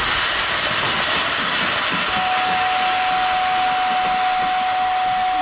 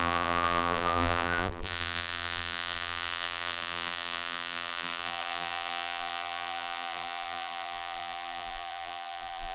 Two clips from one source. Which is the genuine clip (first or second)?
first